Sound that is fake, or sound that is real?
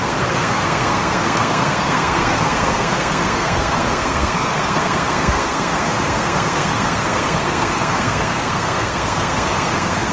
fake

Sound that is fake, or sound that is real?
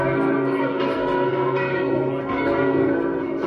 fake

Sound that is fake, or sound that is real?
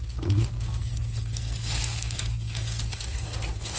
fake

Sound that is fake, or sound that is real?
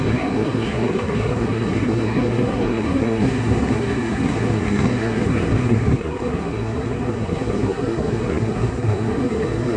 fake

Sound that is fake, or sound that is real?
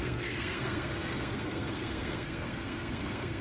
fake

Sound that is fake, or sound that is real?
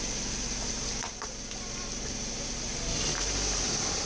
real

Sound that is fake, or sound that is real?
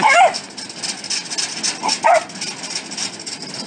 real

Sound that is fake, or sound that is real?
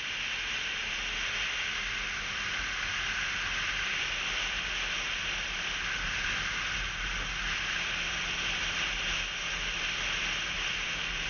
real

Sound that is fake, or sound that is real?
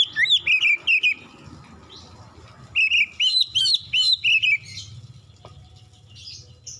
real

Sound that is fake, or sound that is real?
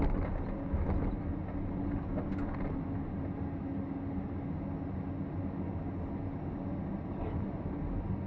real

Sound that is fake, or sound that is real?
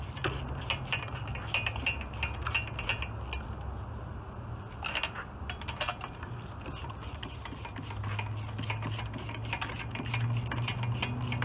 real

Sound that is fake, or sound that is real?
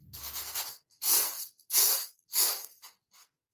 fake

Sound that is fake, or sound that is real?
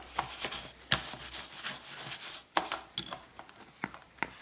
real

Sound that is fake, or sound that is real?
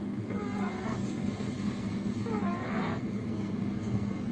fake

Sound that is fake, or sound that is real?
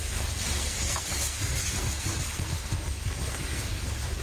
fake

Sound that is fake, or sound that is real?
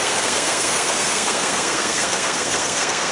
fake